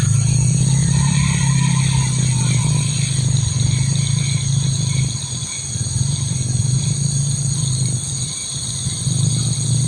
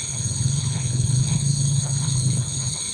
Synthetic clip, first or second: second